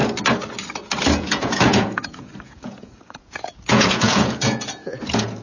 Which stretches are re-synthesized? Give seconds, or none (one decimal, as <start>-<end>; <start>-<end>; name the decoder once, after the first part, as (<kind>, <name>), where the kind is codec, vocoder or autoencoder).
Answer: 1.2-5.4 (vocoder, Vocos)